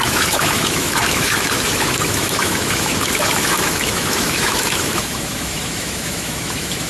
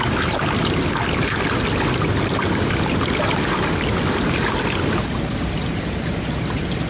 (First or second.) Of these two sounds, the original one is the second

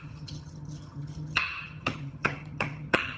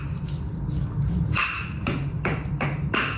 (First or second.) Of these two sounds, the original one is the second